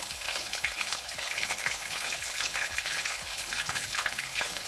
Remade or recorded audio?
remade